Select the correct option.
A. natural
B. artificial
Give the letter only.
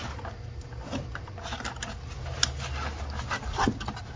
A